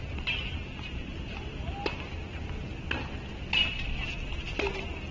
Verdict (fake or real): real